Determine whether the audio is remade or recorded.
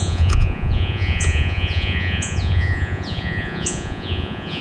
remade